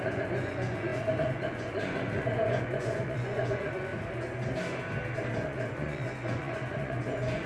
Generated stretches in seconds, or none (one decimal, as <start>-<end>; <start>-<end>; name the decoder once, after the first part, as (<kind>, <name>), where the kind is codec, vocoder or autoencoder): 0.0-3.9 (vocoder, Vocos); 5.3-7.5